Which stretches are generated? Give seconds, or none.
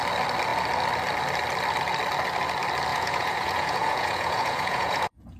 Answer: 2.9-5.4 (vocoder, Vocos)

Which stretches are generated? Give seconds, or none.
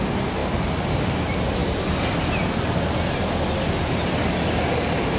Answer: none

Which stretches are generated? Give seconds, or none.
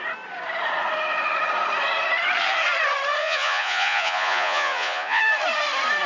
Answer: 3.2-5.2 (vocoder, Vocos)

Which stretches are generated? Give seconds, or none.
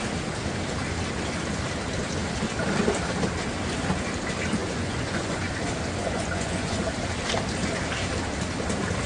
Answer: 4.6-5.5 (vocoder, Vocos); 6.0-6.8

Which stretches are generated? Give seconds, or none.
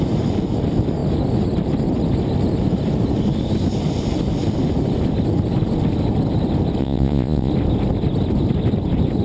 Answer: 6.8-7.5 (vocoder, Vocos)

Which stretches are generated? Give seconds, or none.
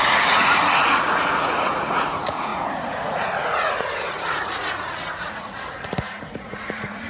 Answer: 0.0-7.1 (vocoder, Vocos)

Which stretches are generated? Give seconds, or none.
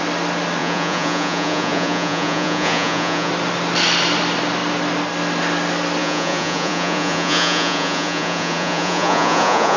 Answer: 0.6-3.3 (vocoder, Vocos); 6.0-9.8